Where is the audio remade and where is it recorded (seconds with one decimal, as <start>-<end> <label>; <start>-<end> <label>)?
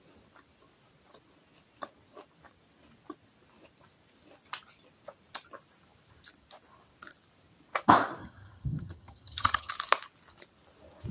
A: 0.0-8.2 recorded; 8.2-9.7 remade; 9.7-11.1 recorded